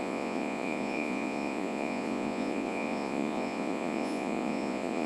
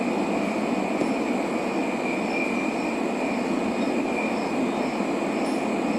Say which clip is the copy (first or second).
first